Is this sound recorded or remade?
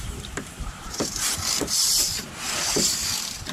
remade